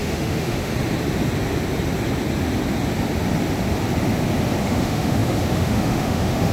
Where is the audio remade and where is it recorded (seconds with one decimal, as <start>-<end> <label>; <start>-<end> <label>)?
0.0-0.7 remade; 0.7-4.6 recorded; 4.6-6.5 remade